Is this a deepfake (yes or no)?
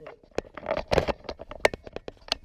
no